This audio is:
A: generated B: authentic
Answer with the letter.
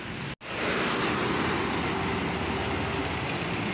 B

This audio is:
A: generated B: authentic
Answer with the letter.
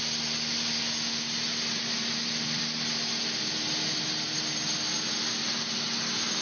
B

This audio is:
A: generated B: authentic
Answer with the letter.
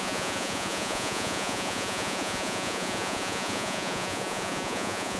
A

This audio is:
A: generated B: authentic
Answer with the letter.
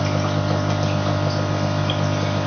B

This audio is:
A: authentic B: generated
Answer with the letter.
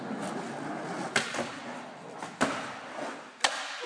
A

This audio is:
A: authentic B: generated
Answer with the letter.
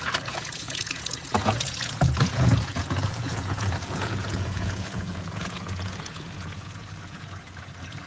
B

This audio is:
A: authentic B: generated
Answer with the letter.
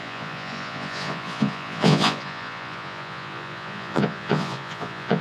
B